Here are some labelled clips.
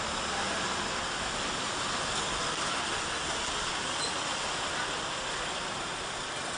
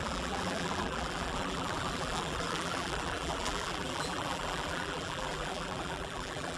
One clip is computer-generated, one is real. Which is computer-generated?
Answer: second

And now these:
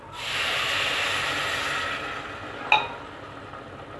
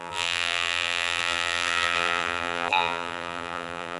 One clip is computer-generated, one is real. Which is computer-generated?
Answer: second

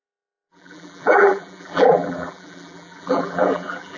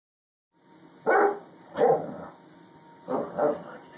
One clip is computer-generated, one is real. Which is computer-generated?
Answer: first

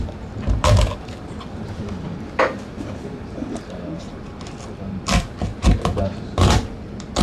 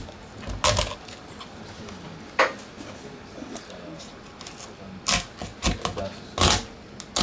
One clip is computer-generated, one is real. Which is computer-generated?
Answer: first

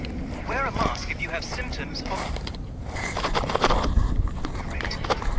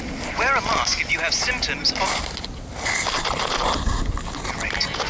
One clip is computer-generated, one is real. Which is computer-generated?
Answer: first